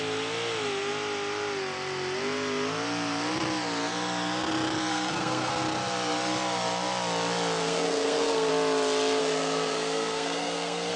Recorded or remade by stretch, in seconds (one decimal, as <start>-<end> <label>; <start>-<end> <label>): 0.0-4.9 recorded; 4.9-5.5 remade; 5.5-7.6 recorded; 7.6-8.5 remade; 8.5-9.2 recorded; 9.2-11.0 remade